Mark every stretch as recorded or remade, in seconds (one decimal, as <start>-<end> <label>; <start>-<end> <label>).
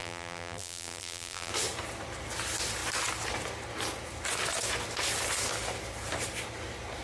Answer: 0.0-1.5 remade; 1.5-7.0 recorded